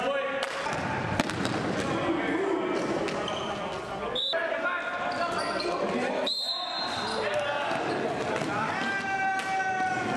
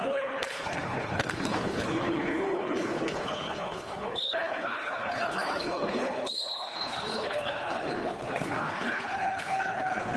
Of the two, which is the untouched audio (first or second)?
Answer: first